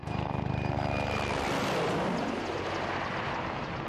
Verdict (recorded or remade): recorded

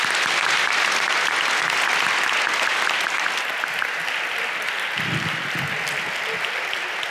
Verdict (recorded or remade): recorded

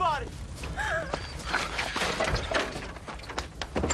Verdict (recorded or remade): recorded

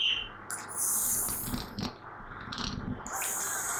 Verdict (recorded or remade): recorded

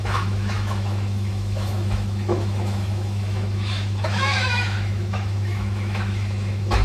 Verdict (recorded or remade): remade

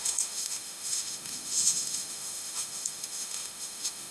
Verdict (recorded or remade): remade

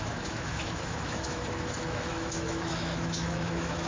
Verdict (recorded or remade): remade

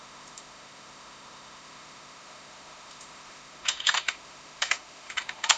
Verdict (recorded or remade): remade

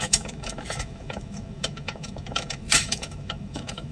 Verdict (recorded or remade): remade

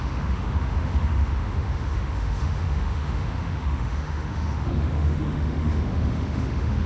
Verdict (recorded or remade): remade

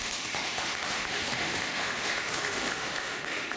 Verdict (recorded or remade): remade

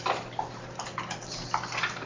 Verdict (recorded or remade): recorded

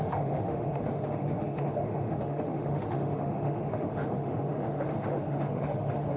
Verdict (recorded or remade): remade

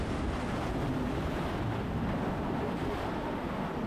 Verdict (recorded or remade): recorded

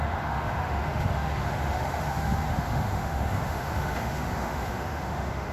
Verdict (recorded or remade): remade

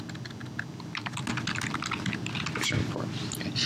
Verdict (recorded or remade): recorded